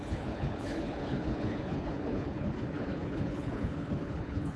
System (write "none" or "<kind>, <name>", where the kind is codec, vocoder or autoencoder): codec, HILCodec